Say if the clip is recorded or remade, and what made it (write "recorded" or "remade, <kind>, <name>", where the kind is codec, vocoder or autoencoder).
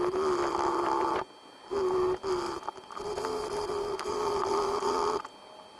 recorded